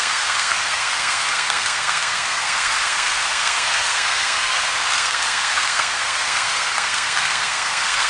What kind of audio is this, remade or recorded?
remade